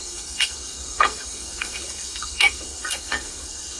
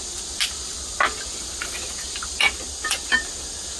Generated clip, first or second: first